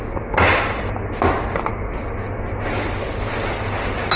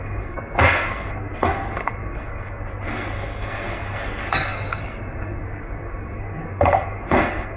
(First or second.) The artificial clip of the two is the second